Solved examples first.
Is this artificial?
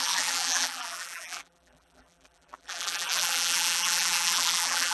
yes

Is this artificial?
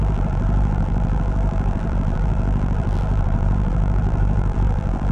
yes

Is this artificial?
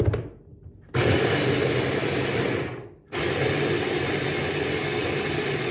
no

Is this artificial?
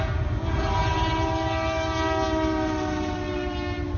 no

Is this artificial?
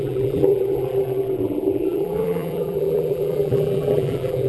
yes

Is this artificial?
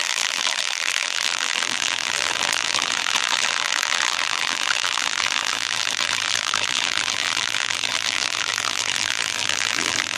yes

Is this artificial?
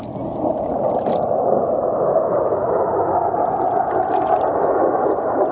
no